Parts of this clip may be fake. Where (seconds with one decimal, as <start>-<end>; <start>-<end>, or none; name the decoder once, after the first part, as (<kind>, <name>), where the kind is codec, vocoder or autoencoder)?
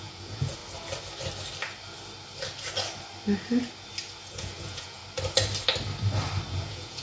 0.0-0.6 (vocoder, Vocos); 4.3-5.0; 6.5-7.0